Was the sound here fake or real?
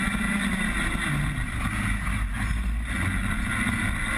real